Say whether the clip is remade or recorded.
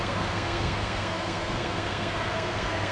remade